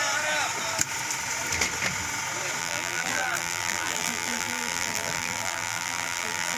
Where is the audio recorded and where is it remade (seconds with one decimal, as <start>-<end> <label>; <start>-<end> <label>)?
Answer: 0.0-2.6 recorded; 2.6-6.6 remade